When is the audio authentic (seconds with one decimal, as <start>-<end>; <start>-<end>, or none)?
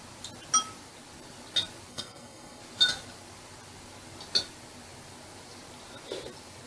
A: 0.0-1.9; 2.6-6.7